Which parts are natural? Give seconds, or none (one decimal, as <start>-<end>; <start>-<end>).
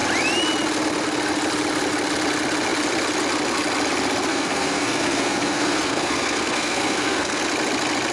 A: 0.0-4.3; 7.4-8.1